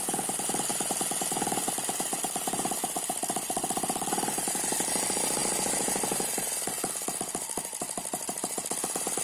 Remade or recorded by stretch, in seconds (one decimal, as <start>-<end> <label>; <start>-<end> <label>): 0.0-2.1 recorded; 2.1-4.5 remade; 4.5-9.2 recorded